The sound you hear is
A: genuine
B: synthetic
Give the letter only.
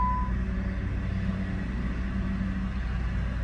A